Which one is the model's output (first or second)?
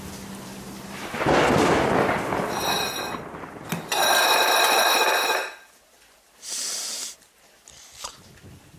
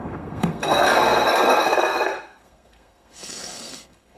second